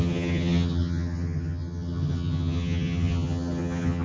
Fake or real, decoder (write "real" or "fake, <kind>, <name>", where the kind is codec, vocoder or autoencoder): fake, vocoder, HiFi-GAN